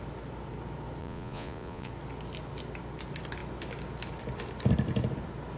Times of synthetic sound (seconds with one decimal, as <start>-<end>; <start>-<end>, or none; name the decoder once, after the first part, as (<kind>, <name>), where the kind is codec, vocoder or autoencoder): 1.0-1.9 (vocoder, Vocos)